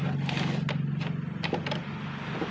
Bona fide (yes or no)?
yes